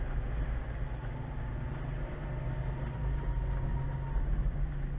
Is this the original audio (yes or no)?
yes